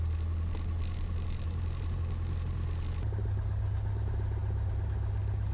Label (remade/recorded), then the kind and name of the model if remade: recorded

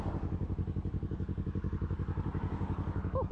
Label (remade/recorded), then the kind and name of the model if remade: remade, codec, DAC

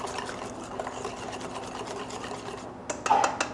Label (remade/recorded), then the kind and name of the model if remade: recorded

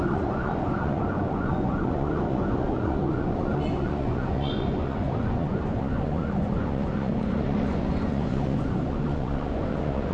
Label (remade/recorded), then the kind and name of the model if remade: remade, vocoder, Vocos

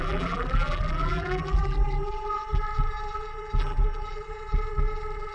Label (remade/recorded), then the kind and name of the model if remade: remade, vocoder, BigVGAN v2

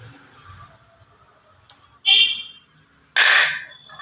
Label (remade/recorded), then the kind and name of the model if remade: recorded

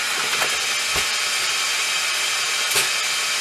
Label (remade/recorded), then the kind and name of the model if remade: recorded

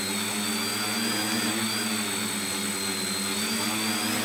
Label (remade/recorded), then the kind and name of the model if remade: recorded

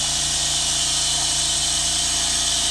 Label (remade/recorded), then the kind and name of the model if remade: recorded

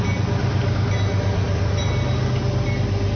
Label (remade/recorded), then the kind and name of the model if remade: recorded